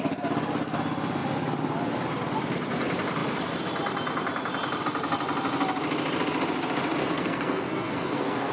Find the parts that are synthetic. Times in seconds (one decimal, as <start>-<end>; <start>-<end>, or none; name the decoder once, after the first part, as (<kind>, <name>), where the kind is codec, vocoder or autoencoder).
7.0-8.5 (codec, SNAC)